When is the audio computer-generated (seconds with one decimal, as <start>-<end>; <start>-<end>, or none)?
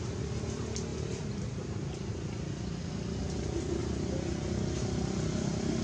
none